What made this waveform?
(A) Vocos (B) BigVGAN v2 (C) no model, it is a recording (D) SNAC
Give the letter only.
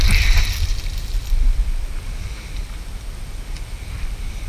B